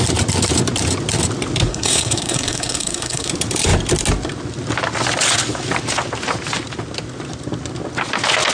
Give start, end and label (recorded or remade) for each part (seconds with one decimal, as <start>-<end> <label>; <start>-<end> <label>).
0.0-1.7 recorded; 1.7-3.3 remade; 3.3-8.5 recorded